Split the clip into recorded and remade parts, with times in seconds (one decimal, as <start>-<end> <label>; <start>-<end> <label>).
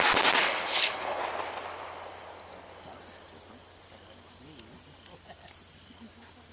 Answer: 0.0-0.4 recorded; 0.4-1.2 remade; 1.2-6.5 recorded